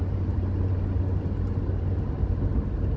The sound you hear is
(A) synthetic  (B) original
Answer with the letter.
B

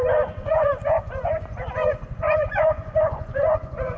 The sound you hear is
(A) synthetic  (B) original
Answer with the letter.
A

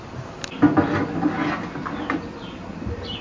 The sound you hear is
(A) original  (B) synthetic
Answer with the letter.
A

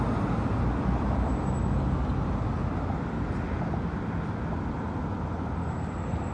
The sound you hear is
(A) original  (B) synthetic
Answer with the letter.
A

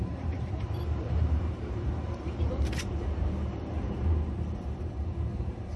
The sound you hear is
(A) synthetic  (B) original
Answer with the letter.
A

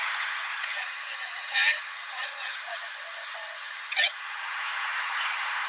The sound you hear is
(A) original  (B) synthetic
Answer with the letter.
B